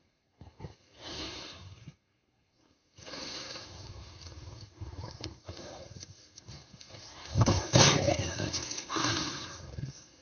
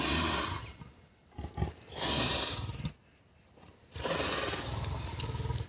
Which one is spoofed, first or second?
first